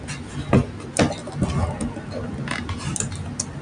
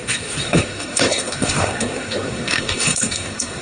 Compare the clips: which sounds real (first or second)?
first